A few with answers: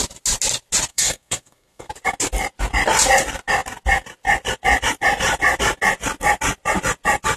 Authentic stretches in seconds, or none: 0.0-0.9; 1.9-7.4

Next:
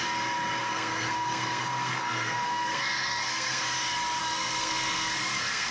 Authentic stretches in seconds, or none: 0.0-0.6; 3.6-4.2

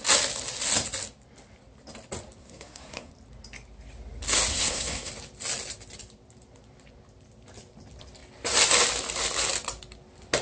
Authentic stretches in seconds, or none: 0.0-2.4; 3.1-4.5; 5.1-10.4

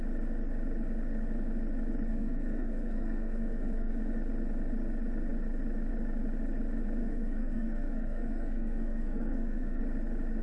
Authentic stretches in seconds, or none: 0.0-2.1; 3.9-7.0; 9.8-10.4